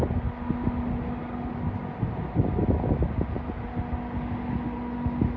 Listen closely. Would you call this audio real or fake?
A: real